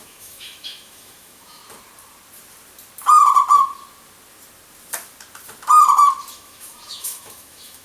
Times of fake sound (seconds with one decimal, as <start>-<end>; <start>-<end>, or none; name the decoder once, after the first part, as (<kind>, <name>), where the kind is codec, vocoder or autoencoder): 0.0-1.6 (autoencoder, DAC-VAE); 6.3-7.8